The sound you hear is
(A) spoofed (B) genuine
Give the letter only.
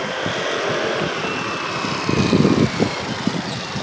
B